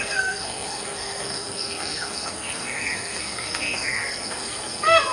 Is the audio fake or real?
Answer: fake